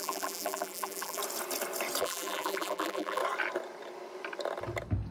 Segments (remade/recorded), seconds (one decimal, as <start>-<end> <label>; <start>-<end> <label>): 0.0-1.2 remade; 1.2-2.0 recorded; 2.0-3.2 remade; 3.2-5.1 recorded